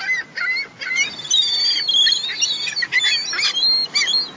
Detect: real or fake real